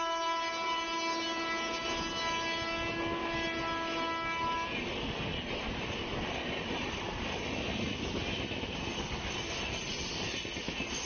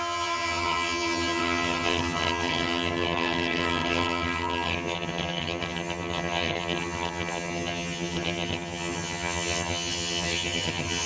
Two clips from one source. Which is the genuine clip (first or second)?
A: first